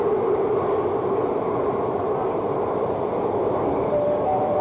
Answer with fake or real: fake